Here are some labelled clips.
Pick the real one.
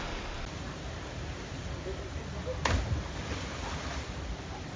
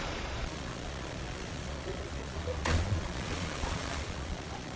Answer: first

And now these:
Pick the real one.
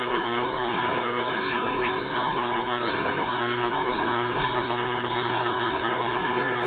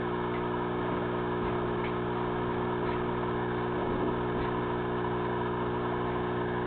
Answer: second